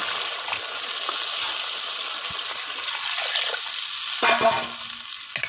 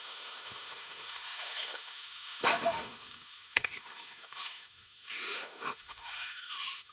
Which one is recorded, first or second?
first